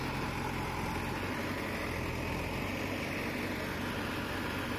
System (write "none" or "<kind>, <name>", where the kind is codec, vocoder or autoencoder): none